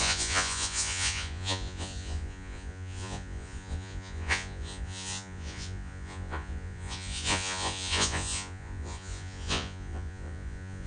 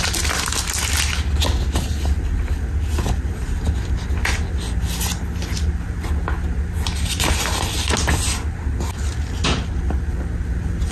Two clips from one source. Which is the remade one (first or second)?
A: first